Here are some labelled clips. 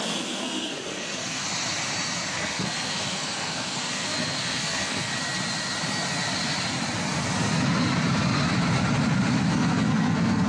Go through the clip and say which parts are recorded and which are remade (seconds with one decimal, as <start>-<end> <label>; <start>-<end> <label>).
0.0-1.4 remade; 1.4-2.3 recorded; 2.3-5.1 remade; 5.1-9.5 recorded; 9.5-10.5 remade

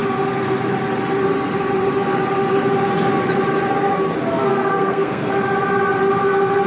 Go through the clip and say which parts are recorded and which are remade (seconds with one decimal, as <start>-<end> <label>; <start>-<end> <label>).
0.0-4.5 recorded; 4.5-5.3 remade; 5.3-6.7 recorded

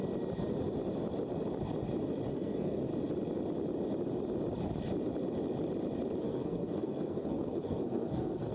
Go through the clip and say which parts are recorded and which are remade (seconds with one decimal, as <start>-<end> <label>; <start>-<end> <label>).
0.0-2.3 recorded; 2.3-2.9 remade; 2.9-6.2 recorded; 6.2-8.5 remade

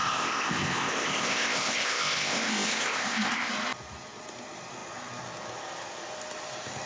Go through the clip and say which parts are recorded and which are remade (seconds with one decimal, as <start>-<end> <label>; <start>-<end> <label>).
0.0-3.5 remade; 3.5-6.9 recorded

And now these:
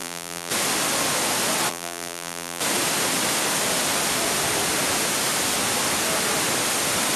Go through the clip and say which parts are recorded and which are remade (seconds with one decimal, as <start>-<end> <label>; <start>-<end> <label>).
0.0-0.5 remade; 0.5-1.7 recorded; 1.7-2.6 remade; 2.6-7.2 recorded